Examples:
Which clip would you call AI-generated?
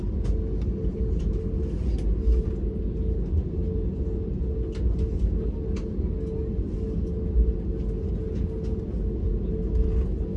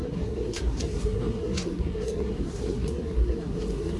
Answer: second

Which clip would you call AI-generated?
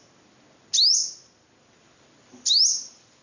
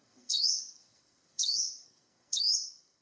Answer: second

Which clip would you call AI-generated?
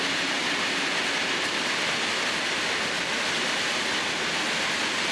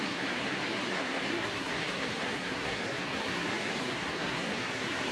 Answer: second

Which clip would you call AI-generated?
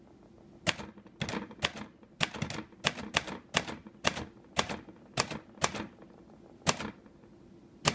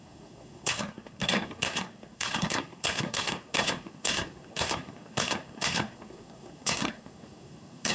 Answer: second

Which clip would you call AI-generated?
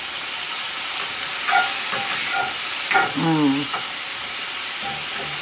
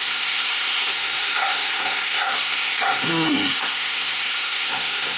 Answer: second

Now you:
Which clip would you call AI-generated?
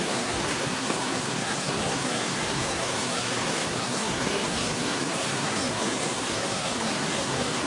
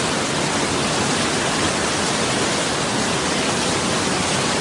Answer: first